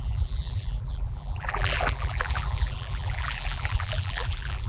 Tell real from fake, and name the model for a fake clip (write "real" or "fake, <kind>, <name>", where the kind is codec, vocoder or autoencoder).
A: fake, vocoder, BigVGAN v2